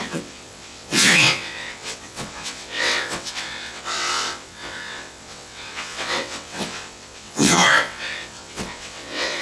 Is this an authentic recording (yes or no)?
no